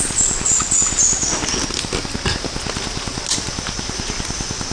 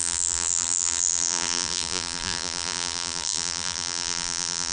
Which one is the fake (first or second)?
second